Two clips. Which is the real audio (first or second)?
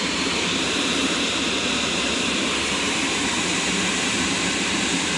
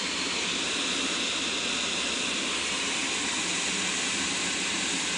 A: second